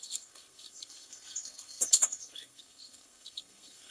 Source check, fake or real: fake